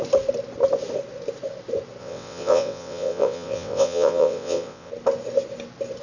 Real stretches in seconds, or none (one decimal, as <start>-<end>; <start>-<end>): 0.0-2.0; 4.9-6.0